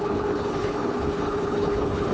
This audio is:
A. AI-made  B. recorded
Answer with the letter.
A